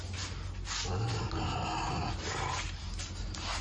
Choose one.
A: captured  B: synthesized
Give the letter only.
A